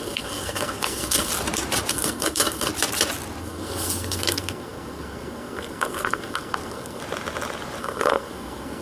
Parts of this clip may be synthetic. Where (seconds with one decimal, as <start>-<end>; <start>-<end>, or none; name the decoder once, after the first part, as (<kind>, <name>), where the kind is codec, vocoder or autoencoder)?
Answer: 0.0-1.3 (codec, SNAC); 1.9-2.7; 3.4-7.0; 7.8-8.8